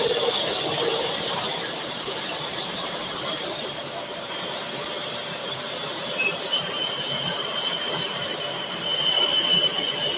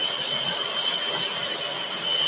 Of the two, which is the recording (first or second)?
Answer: second